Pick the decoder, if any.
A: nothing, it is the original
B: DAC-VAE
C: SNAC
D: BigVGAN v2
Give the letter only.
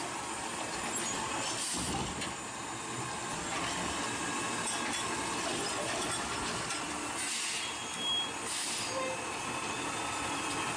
A